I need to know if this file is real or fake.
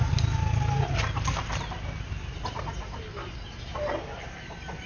real